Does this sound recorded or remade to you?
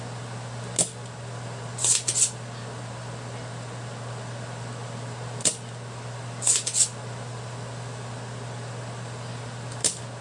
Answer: recorded